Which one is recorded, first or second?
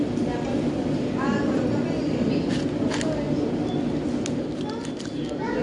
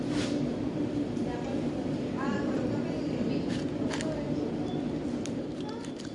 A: first